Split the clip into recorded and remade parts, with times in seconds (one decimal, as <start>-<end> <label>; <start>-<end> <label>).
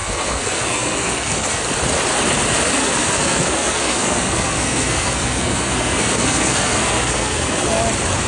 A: 0.0-1.6 remade; 1.6-2.8 recorded; 2.8-7.8 remade; 7.8-8.3 recorded